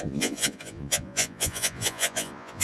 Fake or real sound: fake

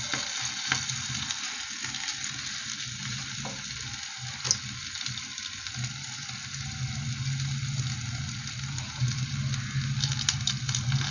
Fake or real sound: real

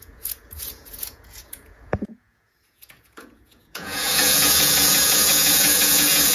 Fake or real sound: fake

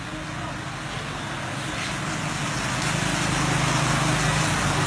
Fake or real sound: real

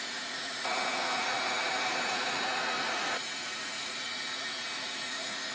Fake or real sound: fake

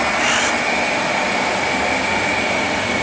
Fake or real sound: real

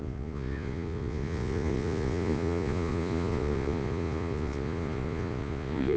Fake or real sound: fake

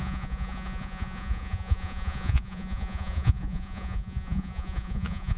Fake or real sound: fake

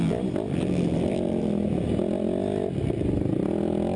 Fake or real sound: real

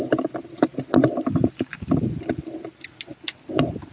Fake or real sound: real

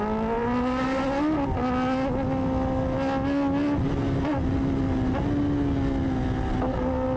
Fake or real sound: real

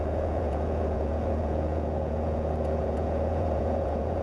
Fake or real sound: fake